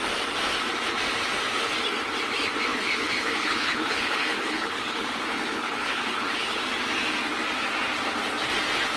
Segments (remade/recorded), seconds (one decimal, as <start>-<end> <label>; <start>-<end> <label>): 0.0-2.7 recorded; 2.7-6.6 remade; 6.6-9.0 recorded